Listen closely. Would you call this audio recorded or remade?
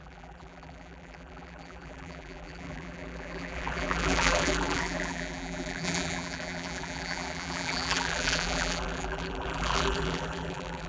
remade